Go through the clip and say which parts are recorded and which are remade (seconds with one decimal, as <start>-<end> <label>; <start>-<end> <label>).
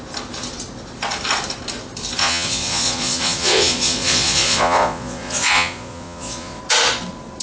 0.0-2.2 recorded; 2.2-6.6 remade; 6.6-7.4 recorded